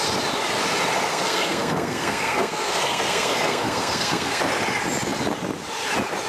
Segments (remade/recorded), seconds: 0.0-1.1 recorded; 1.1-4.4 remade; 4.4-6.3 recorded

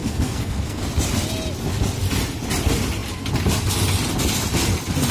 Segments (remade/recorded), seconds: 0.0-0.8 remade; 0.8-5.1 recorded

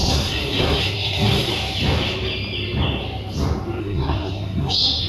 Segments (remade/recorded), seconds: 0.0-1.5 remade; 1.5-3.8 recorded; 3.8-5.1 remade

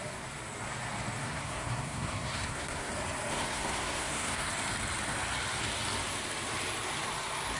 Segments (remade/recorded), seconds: 0.0-1.2 recorded; 1.2-2.9 remade; 2.9-3.3 recorded; 3.3-4.5 remade; 4.5-7.6 recorded

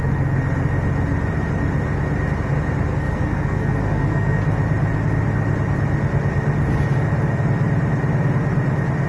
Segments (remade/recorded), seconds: 0.0-2.9 recorded; 2.9-4.4 remade; 4.4-9.1 recorded

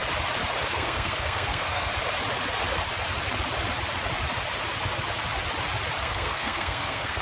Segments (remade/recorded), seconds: 0.0-0.7 recorded; 0.7-1.9 remade; 1.9-6.0 recorded; 6.0-7.2 remade

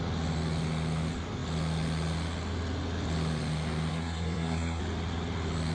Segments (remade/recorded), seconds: 0.0-3.9 recorded; 3.9-4.8 remade; 4.8-5.7 recorded

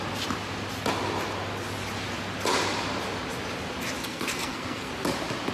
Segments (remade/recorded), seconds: 0.0-4.0 recorded; 4.0-4.9 remade; 4.9-5.5 recorded